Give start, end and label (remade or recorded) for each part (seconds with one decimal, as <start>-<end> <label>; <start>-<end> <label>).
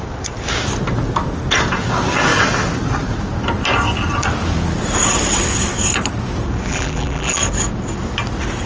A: 0.0-6.7 recorded; 6.7-7.4 remade; 7.4-8.7 recorded